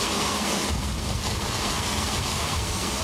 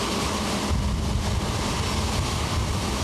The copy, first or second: first